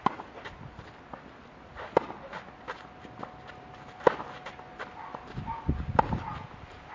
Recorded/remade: recorded